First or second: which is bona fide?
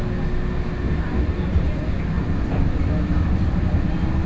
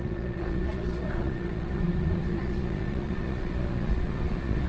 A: first